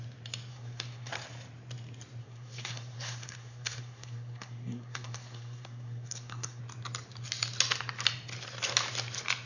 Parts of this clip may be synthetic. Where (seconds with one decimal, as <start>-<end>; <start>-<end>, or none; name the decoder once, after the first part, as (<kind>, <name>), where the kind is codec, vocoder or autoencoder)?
0.5-1.1 (codec, SNAC); 2.2-6.6